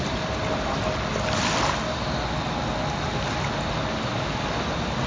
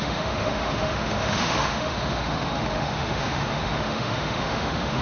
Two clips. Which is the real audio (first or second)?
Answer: first